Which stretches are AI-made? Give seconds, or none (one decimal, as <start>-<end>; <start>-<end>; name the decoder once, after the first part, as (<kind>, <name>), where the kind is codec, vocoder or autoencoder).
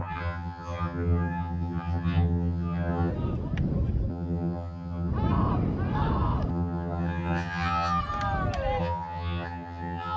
0.0-3.1 (vocoder, HiFi-GAN); 4.1-5.1; 6.5-8.0; 8.8-10.2